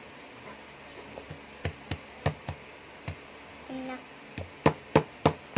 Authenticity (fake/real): real